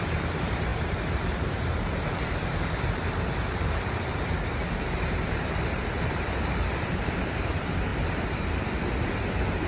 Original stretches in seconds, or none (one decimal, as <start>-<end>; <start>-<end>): none